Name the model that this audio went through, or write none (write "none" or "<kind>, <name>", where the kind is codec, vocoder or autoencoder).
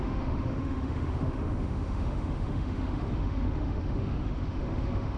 autoencoder, DAC-VAE